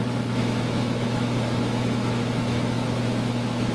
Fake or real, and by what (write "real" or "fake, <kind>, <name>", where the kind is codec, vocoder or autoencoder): fake, autoencoder, DAC-VAE